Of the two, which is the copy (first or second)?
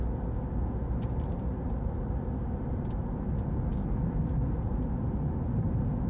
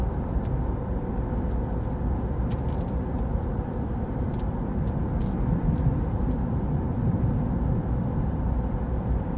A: second